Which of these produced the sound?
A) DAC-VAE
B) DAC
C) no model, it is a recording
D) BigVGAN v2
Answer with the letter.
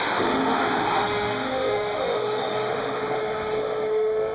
A